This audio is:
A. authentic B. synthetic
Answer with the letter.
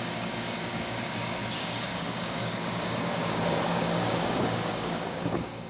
B